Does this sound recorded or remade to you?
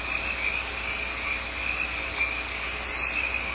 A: recorded